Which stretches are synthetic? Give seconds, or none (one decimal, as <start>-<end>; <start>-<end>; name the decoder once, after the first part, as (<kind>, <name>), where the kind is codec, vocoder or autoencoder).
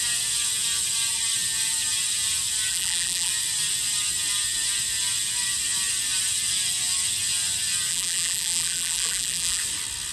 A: 2.7-3.3 (vocoder, BigVGAN v2); 7.9-9.6